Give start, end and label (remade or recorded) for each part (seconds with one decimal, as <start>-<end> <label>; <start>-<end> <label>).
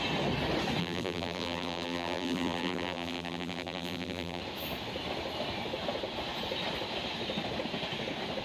0.0-0.8 recorded; 0.8-4.4 remade; 4.4-8.4 recorded